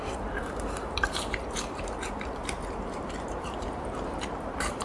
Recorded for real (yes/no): no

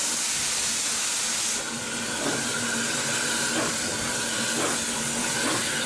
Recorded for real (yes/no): yes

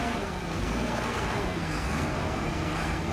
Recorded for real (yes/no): no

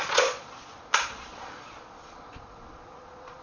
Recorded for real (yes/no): no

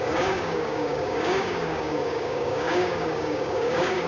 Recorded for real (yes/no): no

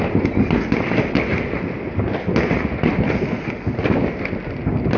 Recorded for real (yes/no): yes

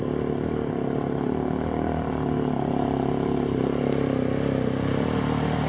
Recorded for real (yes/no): yes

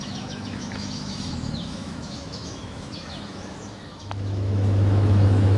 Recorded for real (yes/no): no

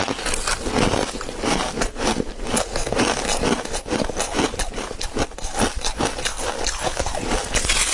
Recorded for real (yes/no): yes